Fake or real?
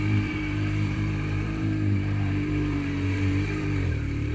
fake